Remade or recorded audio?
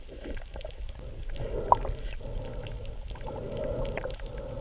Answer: recorded